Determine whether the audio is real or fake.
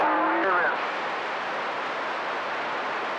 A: real